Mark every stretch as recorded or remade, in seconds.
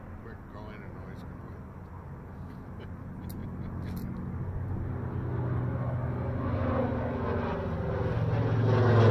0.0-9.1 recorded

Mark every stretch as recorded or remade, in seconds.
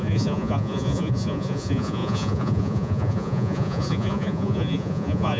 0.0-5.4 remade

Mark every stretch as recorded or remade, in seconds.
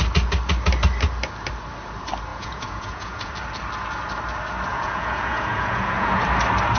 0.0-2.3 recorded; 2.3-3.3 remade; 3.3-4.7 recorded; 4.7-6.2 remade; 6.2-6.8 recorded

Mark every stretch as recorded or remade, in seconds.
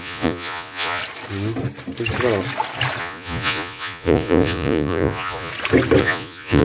0.0-1.0 remade; 1.0-3.0 recorded; 3.0-5.5 remade; 5.5-6.0 recorded; 6.0-6.6 remade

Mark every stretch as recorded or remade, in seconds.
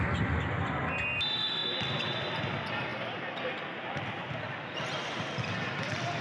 0.0-6.2 recorded